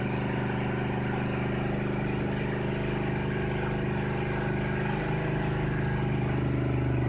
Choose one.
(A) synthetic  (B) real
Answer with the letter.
B